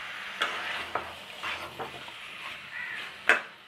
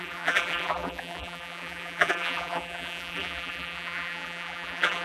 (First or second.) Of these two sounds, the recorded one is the first